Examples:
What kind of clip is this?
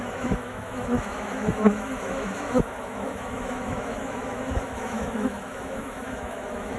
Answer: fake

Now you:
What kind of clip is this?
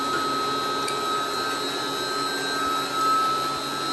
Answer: real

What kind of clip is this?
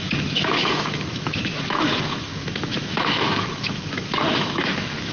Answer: fake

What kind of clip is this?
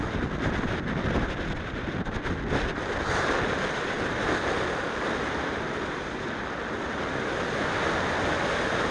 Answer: real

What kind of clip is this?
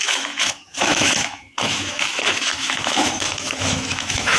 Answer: fake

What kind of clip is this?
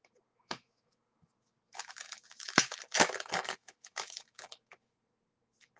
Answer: fake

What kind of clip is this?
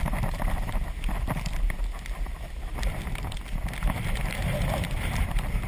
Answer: real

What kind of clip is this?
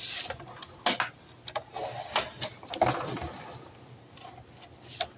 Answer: real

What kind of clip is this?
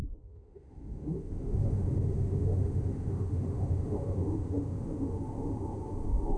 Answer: fake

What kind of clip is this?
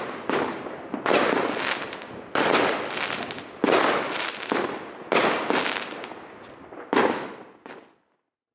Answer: real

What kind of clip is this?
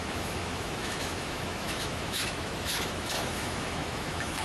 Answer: fake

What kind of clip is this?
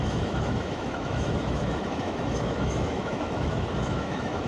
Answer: fake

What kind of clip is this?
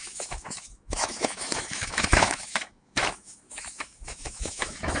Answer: fake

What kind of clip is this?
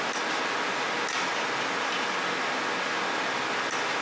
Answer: real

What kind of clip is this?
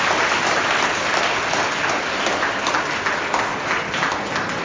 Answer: real